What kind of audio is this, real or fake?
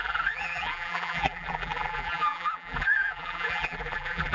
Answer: fake